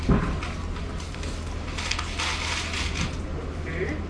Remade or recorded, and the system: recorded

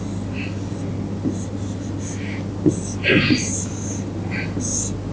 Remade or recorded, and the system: recorded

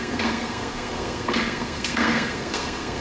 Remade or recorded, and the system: remade, codec, SNAC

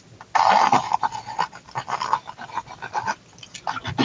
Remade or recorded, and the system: recorded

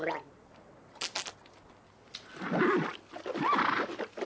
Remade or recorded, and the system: recorded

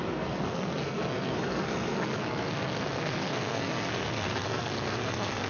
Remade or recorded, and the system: remade, codec, SNAC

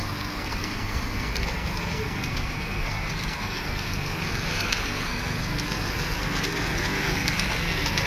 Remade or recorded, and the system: remade, codec, SNAC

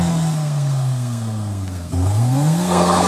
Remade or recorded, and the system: remade, codec, SNAC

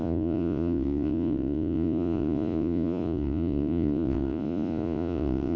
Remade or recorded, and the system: remade, vocoder, Vocos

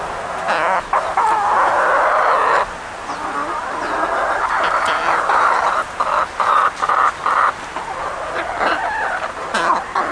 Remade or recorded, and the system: recorded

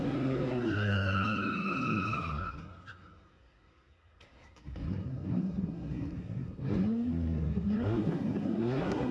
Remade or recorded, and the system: remade, codec, SNAC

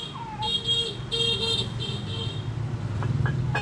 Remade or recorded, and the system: recorded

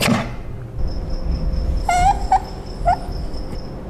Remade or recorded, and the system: recorded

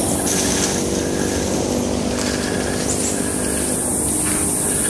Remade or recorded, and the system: recorded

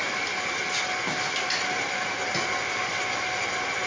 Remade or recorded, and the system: recorded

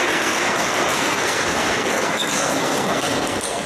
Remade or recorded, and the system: remade, codec, SNAC